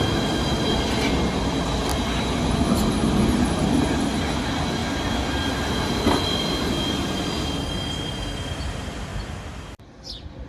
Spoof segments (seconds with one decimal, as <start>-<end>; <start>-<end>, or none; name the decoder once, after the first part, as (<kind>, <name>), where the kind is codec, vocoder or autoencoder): none